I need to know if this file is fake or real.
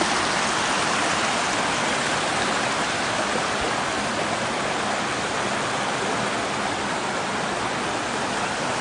real